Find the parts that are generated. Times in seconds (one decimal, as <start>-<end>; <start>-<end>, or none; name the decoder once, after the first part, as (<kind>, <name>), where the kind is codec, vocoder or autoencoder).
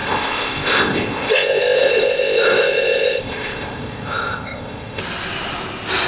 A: 0.0-5.0 (codec, ZipCodec)